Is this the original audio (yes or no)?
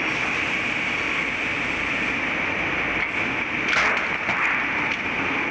yes